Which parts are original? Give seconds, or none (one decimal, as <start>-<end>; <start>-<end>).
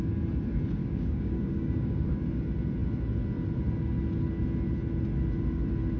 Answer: 0.0-0.8; 2.2-6.0